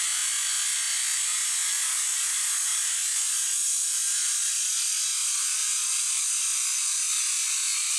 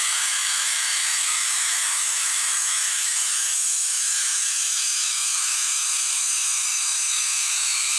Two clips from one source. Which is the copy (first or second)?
second